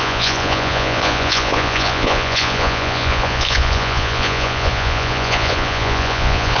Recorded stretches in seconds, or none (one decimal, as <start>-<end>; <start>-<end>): none